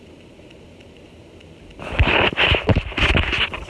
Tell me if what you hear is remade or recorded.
recorded